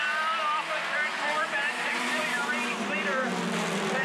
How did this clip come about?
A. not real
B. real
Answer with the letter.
B